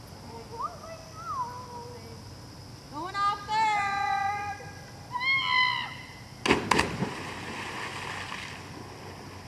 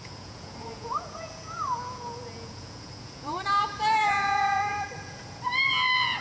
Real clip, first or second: first